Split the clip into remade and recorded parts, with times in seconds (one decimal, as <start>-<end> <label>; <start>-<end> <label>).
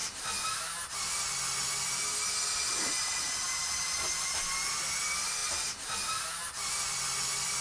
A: 0.0-7.6 recorded